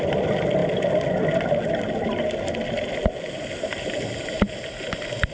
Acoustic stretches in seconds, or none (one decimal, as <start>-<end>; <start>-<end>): 0.0-5.3